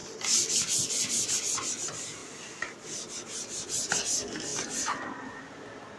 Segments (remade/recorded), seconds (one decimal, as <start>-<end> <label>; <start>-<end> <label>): 0.0-6.0 recorded